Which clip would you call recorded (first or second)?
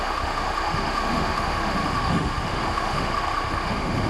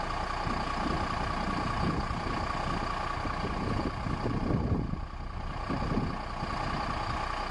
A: second